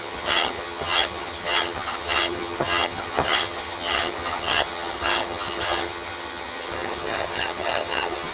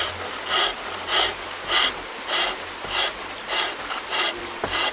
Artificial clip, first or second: first